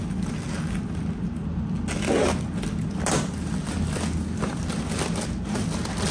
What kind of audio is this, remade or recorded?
recorded